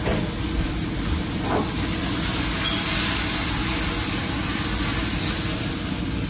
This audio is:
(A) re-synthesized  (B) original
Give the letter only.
B